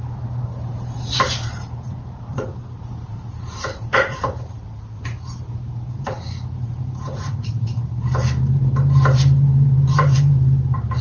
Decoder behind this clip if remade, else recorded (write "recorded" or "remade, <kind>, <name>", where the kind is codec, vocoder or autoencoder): remade, vocoder, BigVGAN v2